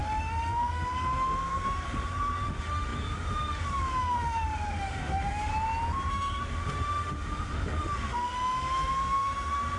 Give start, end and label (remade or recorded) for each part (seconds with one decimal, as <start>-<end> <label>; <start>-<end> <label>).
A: 0.0-5.5 remade; 5.5-6.1 recorded; 6.1-9.8 remade